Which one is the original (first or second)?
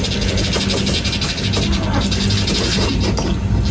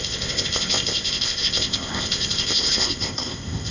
first